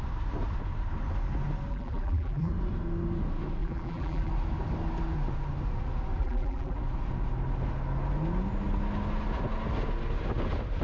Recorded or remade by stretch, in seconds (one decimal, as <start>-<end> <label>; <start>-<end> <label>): 0.0-1.7 recorded; 1.7-2.5 remade; 2.5-3.6 recorded; 3.6-4.3 remade; 4.3-6.2 recorded; 6.2-6.8 remade; 6.8-10.8 recorded